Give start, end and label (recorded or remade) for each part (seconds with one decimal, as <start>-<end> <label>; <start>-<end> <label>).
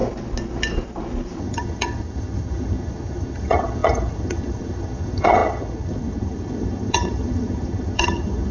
0.0-1.4 recorded; 1.4-8.5 remade